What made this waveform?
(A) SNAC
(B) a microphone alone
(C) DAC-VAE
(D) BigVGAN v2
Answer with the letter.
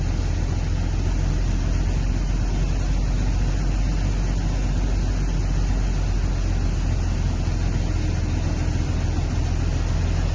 B